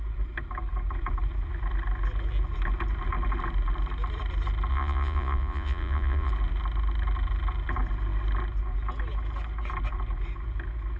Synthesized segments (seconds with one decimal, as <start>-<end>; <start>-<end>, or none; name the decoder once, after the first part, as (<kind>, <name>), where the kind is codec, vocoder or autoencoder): 4.7-6.3 (vocoder, Vocos)